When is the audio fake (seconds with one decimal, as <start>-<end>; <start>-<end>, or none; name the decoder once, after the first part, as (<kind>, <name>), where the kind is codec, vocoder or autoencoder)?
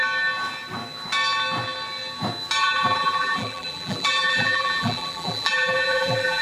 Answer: 2.6-6.4 (vocoder, BigVGAN v2)